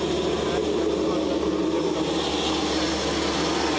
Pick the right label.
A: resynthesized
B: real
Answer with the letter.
B